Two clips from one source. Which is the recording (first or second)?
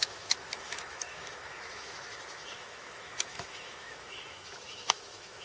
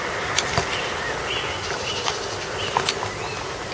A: second